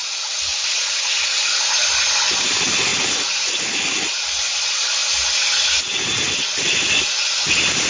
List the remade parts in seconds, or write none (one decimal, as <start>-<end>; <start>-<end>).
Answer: 0.0-2.0